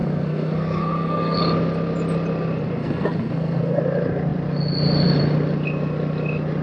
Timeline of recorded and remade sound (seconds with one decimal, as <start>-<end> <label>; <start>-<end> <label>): 0.0-1.4 remade; 1.4-2.8 recorded; 2.8-3.8 remade; 3.8-6.6 recorded